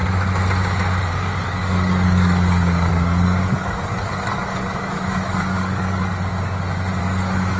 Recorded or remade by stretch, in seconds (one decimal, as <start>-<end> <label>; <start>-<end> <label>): 0.0-1.1 recorded; 1.1-6.1 remade; 6.1-7.0 recorded; 7.0-7.6 remade